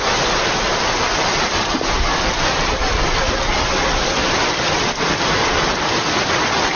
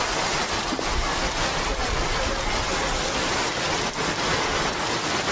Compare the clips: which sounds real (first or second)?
second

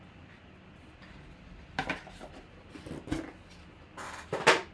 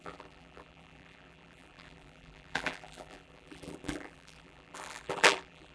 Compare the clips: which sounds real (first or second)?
first